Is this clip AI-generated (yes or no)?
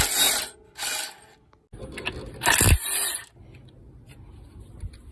no